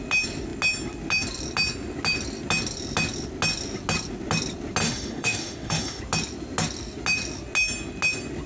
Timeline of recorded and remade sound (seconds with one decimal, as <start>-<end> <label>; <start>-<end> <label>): 0.0-4.8 recorded; 4.8-6.0 remade; 6.0-8.5 recorded

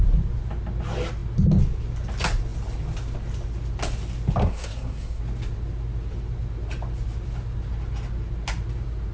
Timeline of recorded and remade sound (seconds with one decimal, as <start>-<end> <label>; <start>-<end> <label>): 0.0-4.4 recorded; 4.4-5.2 remade; 5.2-9.1 recorded

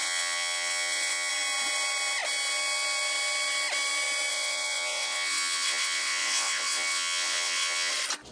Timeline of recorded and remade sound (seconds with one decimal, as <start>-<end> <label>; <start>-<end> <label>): 0.0-1.3 remade; 1.3-4.3 recorded; 4.3-7.9 remade; 7.9-8.3 recorded

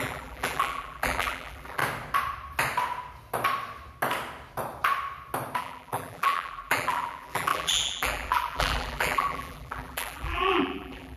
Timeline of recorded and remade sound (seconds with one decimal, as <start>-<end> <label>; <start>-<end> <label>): 0.0-1.8 remade; 1.8-5.6 recorded; 5.6-11.2 remade

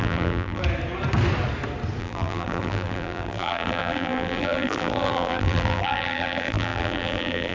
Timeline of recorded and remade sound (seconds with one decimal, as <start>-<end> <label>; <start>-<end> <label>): 0.0-0.6 remade; 0.6-2.0 recorded; 2.0-7.5 remade

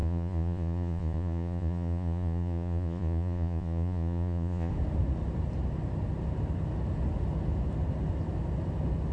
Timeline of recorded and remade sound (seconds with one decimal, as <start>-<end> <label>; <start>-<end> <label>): 0.0-4.7 remade; 4.7-9.1 recorded

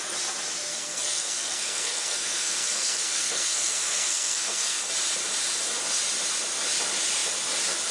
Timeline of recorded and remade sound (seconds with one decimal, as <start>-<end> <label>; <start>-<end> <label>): 0.0-0.7 recorded; 0.7-4.8 remade; 4.8-7.9 recorded

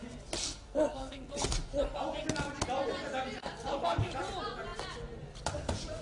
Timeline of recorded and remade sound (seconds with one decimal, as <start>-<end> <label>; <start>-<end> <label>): 0.0-0.4 recorded; 0.4-1.3 remade; 1.3-3.4 recorded; 3.4-4.1 remade; 4.1-6.0 recorded